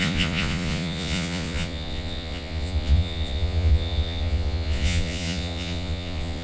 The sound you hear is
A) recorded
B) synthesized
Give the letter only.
B